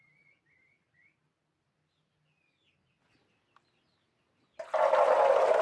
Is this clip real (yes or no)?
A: yes